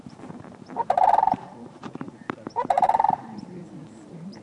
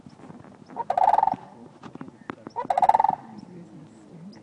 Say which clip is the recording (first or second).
second